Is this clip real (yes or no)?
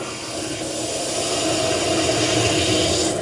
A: yes